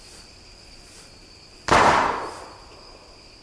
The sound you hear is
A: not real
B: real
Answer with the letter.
B